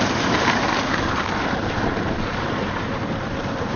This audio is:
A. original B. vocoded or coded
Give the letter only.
B